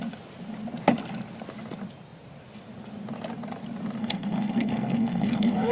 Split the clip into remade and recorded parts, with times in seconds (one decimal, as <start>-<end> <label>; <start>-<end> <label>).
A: 0.0-4.0 recorded; 4.0-5.7 remade